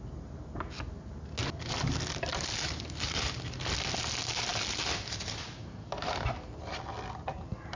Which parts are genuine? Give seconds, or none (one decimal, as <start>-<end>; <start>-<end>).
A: 0.0-7.8